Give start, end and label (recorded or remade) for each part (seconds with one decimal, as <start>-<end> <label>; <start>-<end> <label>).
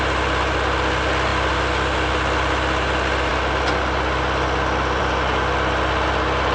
0.0-6.5 recorded